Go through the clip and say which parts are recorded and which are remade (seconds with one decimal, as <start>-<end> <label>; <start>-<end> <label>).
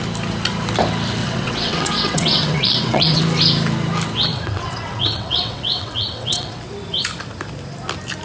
0.0-1.2 recorded; 1.2-3.2 remade; 3.2-4.3 recorded; 4.3-6.6 remade; 6.6-8.2 recorded